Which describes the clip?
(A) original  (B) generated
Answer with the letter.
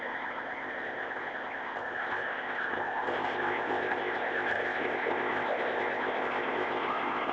B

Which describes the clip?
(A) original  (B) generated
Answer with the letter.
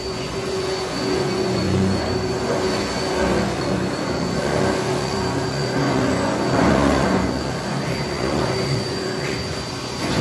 B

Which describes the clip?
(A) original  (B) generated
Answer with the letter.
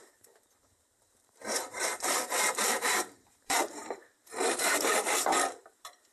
B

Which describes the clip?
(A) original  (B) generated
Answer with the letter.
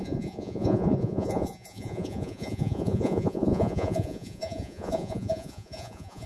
B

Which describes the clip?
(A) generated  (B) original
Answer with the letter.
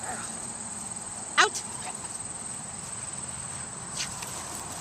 A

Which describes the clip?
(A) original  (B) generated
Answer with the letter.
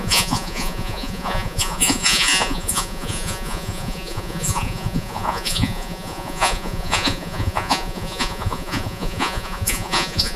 B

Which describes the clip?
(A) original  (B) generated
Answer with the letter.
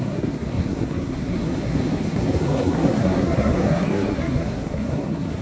B